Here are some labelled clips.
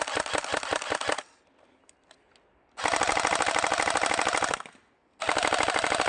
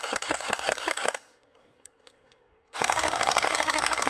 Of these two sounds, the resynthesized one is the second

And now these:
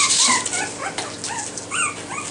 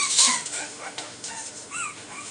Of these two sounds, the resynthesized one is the second